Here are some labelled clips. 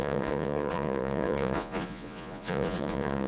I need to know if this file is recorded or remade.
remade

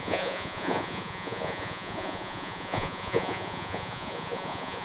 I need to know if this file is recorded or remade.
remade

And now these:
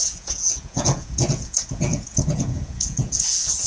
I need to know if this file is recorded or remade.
remade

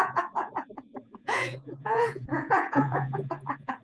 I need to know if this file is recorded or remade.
remade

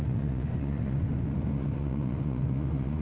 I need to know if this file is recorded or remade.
remade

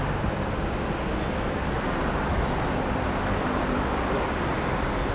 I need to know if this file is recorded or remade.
recorded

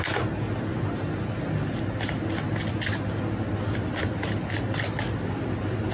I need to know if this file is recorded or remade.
recorded